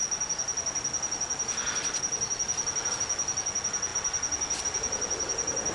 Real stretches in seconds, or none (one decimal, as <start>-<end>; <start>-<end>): 0.0-5.7